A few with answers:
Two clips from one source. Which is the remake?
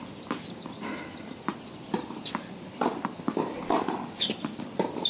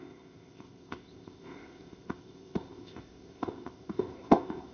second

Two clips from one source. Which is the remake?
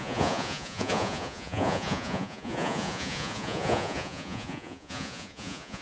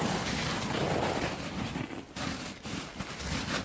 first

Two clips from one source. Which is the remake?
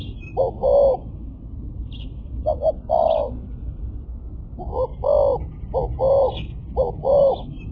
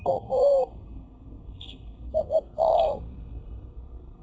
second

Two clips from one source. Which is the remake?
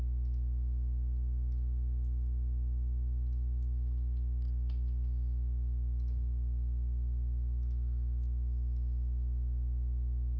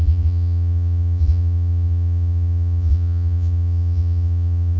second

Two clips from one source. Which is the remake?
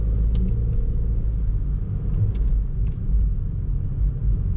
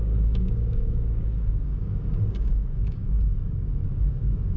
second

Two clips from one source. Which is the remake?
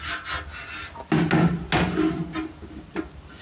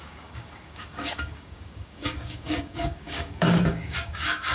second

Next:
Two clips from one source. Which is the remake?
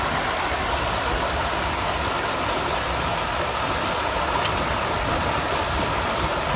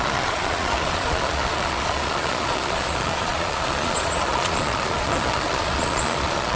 second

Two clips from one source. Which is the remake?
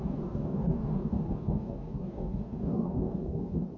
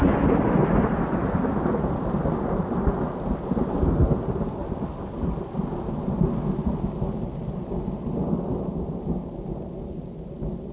first